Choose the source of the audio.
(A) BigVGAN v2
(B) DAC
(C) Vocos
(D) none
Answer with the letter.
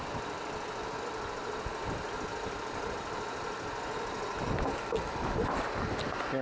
D